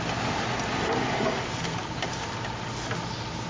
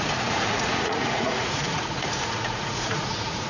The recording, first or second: first